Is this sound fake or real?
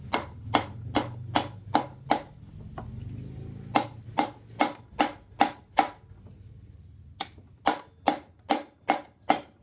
real